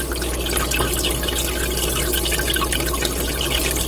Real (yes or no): yes